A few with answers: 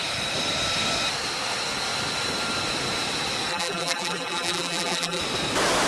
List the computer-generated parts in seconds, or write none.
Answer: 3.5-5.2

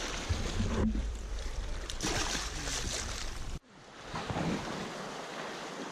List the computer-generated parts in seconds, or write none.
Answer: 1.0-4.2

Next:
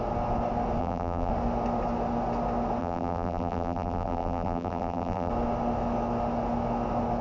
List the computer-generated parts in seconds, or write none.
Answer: 0.8-1.3; 2.8-5.3